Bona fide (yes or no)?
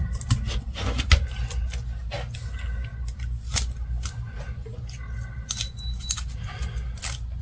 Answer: yes